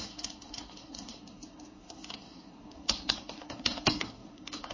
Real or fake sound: fake